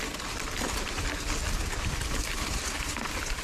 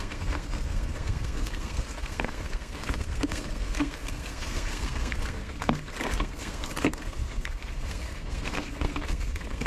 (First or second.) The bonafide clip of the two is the first